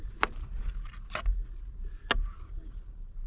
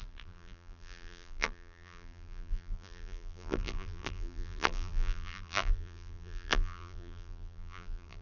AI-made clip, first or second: second